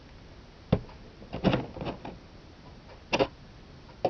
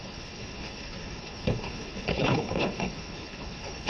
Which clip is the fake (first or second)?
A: second